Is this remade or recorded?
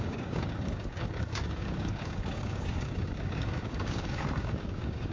remade